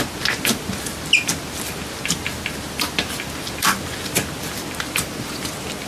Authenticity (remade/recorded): recorded